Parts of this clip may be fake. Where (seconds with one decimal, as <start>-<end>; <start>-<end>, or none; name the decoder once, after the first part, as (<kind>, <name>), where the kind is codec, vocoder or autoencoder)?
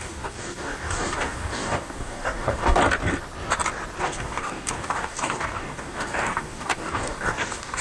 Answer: 0.0-2.8 (codec, DAC); 4.0-7.8